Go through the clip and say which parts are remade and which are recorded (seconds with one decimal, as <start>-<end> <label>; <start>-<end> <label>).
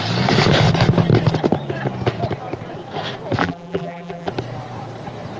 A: 0.0-3.4 recorded; 3.4-4.3 remade; 4.3-5.4 recorded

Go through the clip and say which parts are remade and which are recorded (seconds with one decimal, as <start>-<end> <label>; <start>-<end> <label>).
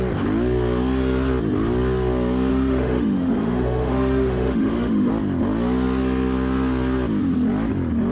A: 0.0-2.5 recorded; 2.5-5.1 remade; 5.1-8.1 recorded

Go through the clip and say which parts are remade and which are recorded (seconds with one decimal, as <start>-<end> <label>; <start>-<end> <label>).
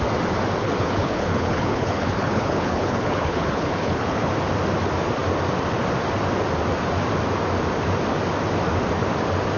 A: 0.0-0.6 recorded; 0.6-4.3 remade; 4.3-9.6 recorded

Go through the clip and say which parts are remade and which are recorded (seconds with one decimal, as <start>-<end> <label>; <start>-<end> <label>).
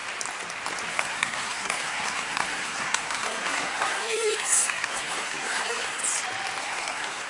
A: 0.0-0.9 recorded; 0.9-6.0 remade; 6.0-6.6 recorded; 6.6-7.3 remade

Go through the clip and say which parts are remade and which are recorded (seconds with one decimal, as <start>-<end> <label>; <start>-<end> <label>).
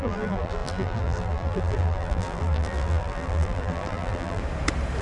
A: 0.0-4.4 remade; 4.4-5.0 recorded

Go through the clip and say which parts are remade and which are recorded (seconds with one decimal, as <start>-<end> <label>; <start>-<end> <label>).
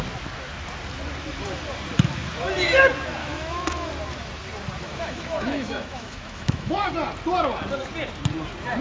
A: 0.0-3.2 recorded; 3.2-3.9 remade; 3.9-4.9 recorded; 4.9-6.9 remade; 6.9-8.8 recorded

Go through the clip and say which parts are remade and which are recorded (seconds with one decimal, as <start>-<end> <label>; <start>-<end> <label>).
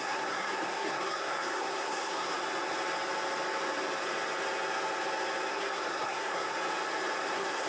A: 0.0-2.3 remade; 2.3-5.5 recorded; 5.5-6.6 remade; 6.6-7.2 recorded; 7.2-7.7 remade